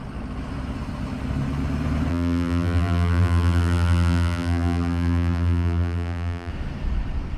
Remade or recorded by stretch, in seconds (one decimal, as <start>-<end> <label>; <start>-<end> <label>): 0.0-2.1 recorded; 2.1-6.5 remade; 6.5-7.4 recorded